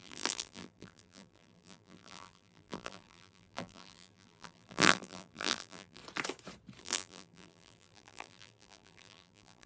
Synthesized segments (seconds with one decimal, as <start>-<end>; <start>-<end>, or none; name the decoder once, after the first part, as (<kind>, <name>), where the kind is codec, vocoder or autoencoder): 0.0-6.0 (vocoder, BigVGAN v2); 6.8-9.7